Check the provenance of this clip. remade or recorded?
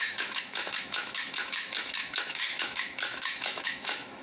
remade